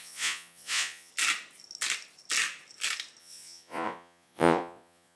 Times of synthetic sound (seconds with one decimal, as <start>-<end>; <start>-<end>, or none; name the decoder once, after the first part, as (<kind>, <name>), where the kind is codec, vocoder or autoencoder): 0.0-1.1 (vocoder, Vocos); 3.2-5.2